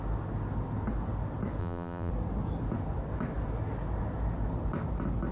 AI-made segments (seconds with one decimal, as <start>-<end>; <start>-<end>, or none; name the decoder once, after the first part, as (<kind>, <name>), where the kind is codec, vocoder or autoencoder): 1.6-2.1 (vocoder, BigVGAN v2)